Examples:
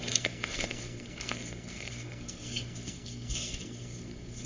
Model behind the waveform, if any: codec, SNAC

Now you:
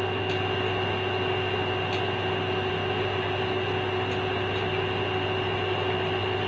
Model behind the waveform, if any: none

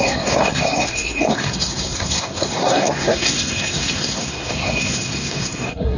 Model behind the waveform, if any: codec, SNAC